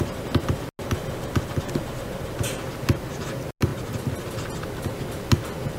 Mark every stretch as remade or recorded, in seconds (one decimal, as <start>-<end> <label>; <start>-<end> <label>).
0.0-5.8 recorded